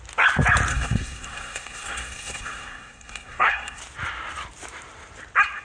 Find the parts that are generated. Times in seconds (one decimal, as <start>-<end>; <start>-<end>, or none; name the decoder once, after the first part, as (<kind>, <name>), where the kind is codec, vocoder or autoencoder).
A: 0.7-3.8 (codec, SNAC)